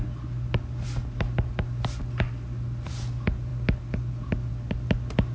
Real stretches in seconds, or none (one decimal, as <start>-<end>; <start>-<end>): 0.0-5.3